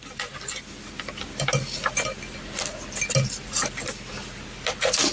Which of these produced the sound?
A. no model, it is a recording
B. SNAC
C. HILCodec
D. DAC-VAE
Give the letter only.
A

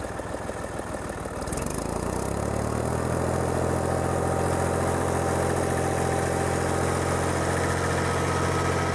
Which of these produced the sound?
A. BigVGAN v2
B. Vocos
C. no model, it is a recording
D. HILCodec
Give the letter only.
C